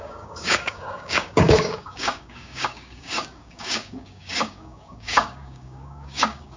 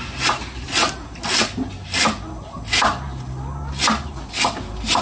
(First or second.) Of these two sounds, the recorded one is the second